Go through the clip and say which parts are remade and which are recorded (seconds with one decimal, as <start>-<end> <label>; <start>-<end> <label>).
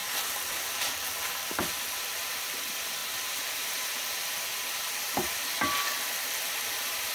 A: 0.0-7.1 recorded